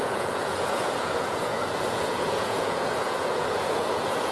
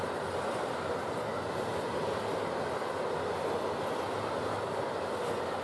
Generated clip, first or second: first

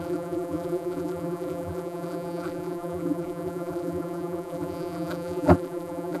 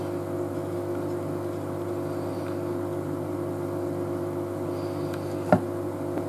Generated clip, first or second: first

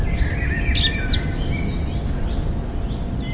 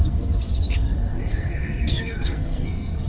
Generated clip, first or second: second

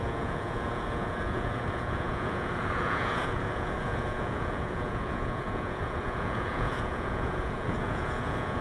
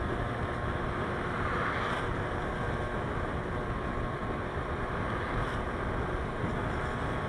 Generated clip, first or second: first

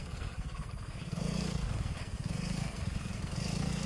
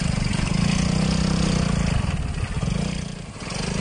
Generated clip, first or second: first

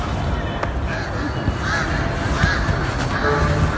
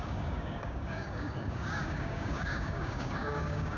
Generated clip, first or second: second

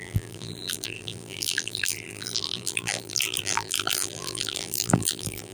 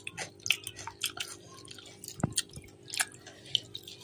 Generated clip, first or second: first